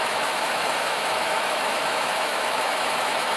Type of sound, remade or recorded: remade